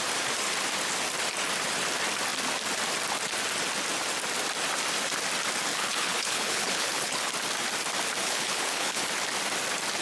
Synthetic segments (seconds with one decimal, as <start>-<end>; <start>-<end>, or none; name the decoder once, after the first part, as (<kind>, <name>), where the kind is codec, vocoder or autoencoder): 5.7-7.3 (codec, HILCodec); 8.2-9.0